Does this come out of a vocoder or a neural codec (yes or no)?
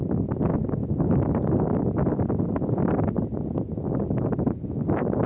no